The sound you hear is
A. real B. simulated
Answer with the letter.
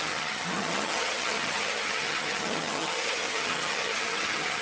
B